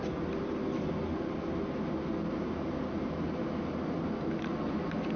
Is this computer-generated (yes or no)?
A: no